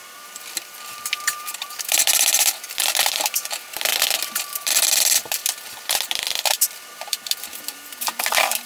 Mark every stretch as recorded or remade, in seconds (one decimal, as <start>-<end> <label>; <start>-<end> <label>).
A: 0.0-8.7 remade